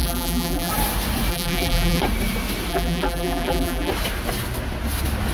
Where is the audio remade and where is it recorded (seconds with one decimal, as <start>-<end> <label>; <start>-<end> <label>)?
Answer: 0.0-0.7 remade; 0.7-1.3 recorded; 1.3-2.0 remade; 2.0-2.7 recorded; 2.7-3.9 remade; 3.9-5.3 recorded

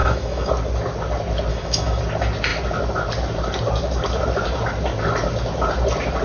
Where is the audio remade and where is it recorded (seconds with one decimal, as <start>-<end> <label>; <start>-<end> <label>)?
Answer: 0.0-0.5 remade; 0.5-1.5 recorded; 1.5-2.0 remade; 2.0-6.2 recorded